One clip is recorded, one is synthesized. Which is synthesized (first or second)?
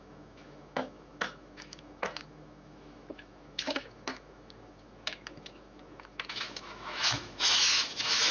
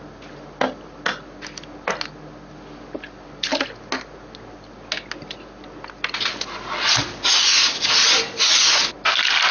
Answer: first